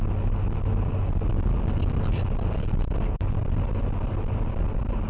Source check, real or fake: real